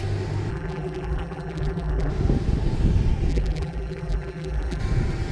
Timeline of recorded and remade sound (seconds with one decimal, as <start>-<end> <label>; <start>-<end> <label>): 0.0-0.5 recorded; 0.5-2.1 remade; 2.1-3.3 recorded; 3.3-4.8 remade; 4.8-5.3 recorded